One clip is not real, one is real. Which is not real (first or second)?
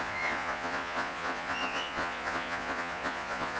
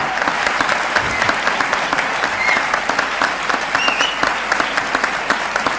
first